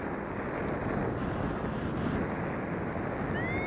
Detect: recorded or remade recorded